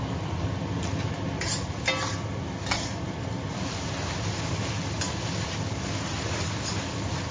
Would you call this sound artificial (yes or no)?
no